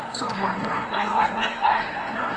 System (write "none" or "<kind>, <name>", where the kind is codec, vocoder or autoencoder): codec, SNAC